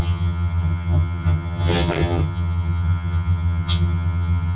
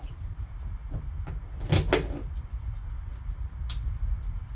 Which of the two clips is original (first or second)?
second